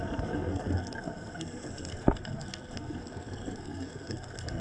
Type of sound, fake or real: fake